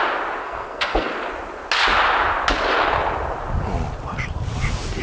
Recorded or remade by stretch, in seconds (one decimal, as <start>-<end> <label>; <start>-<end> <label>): 0.0-0.4 recorded; 0.4-1.1 remade; 1.1-5.0 recorded